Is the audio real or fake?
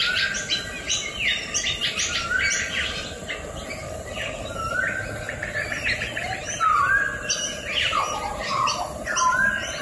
real